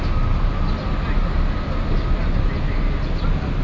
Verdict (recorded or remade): recorded